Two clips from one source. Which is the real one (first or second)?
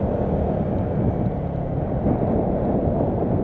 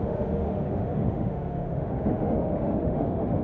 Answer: first